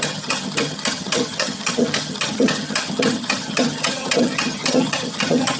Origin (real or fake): fake